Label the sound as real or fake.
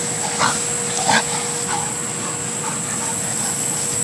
real